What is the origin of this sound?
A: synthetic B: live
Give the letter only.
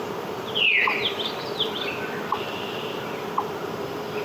A